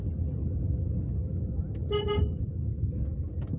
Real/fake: real